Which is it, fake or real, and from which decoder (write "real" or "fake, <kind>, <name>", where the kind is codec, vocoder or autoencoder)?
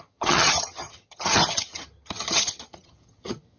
fake, vocoder, HiFi-GAN